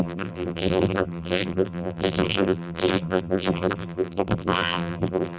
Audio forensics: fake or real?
fake